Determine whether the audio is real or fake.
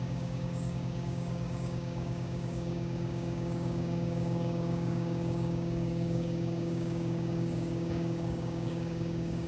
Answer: fake